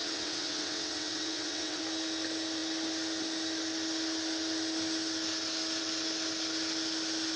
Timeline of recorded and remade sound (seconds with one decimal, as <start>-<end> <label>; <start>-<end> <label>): 0.0-1.8 remade; 1.8-7.4 recorded